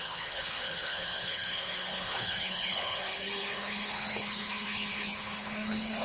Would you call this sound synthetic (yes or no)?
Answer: yes